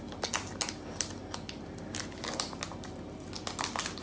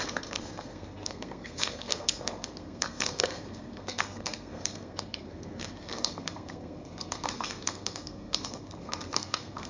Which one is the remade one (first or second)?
second